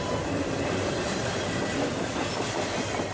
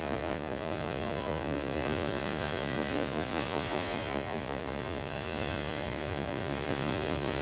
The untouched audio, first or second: first